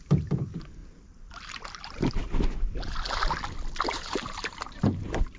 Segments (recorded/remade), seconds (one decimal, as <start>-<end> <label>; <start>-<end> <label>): 0.0-0.8 remade; 0.8-1.5 recorded; 1.5-2.2 remade; 2.2-3.9 recorded; 3.9-5.4 remade